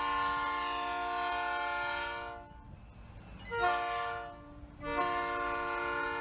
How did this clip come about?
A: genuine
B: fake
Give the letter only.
A